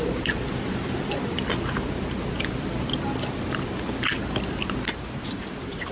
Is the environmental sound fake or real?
real